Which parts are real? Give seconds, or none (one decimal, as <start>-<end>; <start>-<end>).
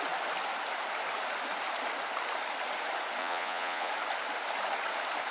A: 0.0-3.2; 3.9-5.3